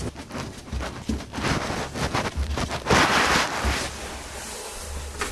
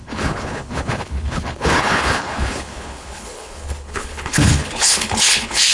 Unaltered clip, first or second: first